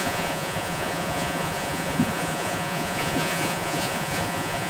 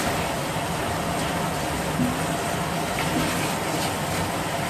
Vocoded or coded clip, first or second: first